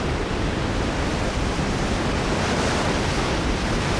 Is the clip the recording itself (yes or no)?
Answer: no